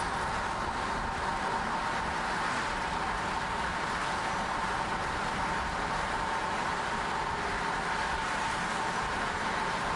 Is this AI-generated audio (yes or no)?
no